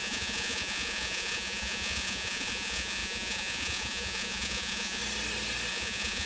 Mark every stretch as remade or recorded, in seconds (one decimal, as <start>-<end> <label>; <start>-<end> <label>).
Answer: 0.0-5.0 remade; 5.0-5.7 recorded; 5.7-6.3 remade